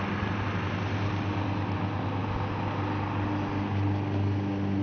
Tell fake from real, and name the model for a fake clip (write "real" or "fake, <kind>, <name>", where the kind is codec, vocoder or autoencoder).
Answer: real